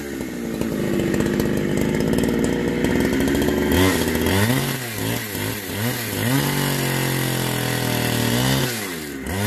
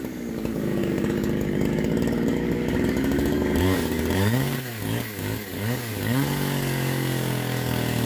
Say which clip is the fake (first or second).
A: second